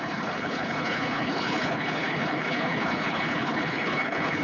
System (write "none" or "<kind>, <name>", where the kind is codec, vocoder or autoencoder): codec, HILCodec